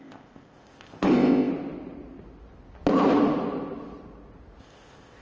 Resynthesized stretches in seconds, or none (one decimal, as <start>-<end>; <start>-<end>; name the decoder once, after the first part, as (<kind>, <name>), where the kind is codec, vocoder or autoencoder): 0.0-1.5 (codec, ZipCodec); 4.6-5.2